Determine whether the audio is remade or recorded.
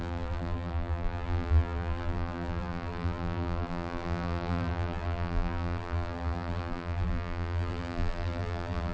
remade